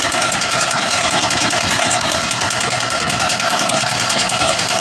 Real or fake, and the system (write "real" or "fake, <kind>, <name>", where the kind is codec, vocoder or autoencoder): fake, codec, SNAC